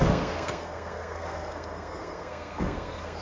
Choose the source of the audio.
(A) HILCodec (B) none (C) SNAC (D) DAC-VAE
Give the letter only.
C